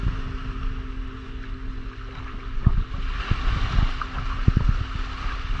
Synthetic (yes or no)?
no